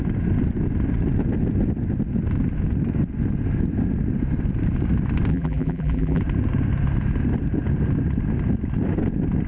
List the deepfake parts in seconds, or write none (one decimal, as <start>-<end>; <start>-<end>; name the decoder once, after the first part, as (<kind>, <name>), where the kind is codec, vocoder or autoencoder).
5.3-6.2 (vocoder, BigVGAN v2)